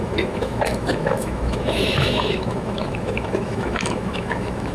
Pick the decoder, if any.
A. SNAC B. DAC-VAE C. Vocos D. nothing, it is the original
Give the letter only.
B